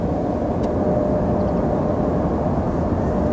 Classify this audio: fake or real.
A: real